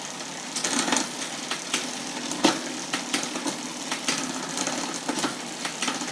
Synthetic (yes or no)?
no